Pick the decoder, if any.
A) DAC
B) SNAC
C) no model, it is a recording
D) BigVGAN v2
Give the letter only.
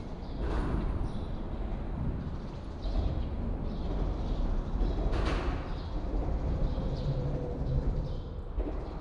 C